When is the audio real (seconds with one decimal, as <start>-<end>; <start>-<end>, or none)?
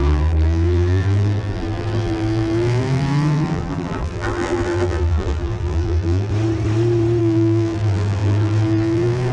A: 6.3-7.2